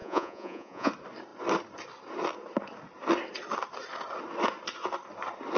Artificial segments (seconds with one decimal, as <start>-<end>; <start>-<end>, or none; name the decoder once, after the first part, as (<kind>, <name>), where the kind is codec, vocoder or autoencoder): 0.0-0.9 (vocoder, Vocos)